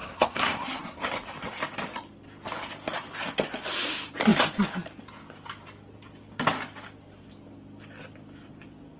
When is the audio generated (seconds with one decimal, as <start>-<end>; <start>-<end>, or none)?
0.0-1.0